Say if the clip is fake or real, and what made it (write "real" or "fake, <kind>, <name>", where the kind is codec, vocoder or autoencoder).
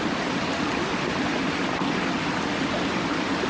real